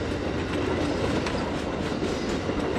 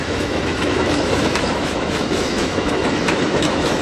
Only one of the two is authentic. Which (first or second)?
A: first